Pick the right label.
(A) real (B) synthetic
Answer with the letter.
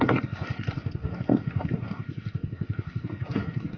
B